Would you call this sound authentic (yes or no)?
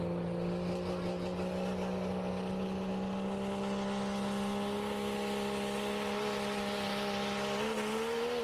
yes